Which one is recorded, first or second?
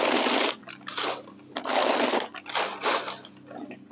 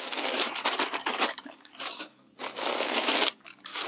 first